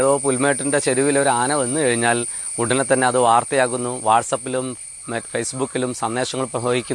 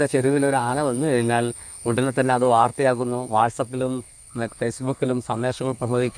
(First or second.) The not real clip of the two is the second